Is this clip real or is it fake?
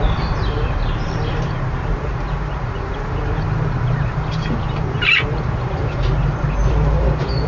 fake